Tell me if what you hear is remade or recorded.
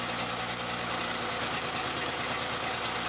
recorded